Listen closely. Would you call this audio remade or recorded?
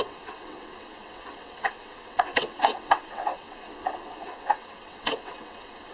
remade